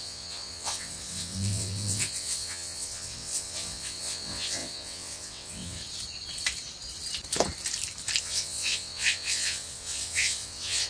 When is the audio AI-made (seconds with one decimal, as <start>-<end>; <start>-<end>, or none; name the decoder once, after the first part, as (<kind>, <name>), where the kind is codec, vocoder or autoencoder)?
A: 0.0-5.8 (vocoder, WaveNeXt); 8.2-10.9